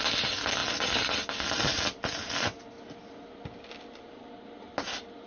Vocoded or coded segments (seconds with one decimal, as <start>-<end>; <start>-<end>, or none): none